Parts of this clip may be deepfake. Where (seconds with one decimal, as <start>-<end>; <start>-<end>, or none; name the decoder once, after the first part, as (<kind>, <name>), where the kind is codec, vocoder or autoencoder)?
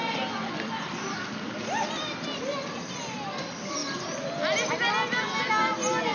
none